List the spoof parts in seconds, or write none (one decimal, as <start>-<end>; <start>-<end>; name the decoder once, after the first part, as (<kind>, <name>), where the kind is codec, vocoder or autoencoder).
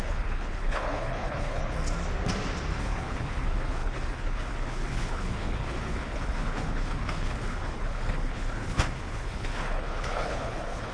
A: 0.0-1.6 (codec, HILCodec); 2.8-10.9